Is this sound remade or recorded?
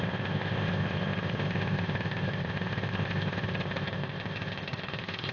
remade